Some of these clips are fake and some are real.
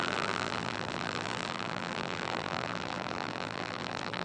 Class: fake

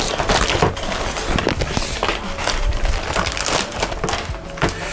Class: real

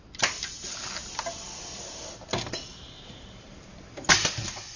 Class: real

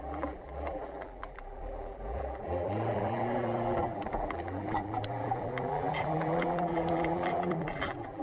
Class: fake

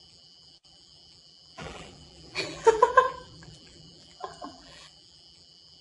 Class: fake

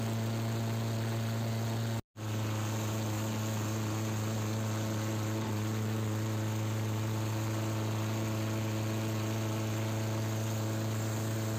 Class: real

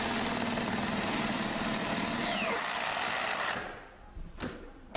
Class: fake